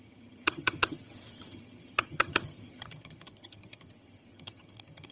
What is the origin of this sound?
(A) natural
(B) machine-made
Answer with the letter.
B